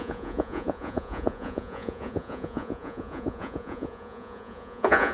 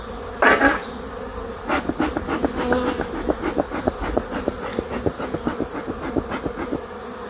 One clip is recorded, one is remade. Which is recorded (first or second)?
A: second